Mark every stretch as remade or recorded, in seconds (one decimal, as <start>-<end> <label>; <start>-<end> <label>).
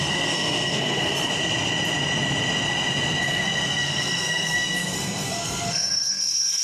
0.0-1.3 remade; 1.3-3.2 recorded; 3.2-6.6 remade